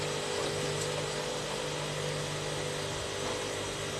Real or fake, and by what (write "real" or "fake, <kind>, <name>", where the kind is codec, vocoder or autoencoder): real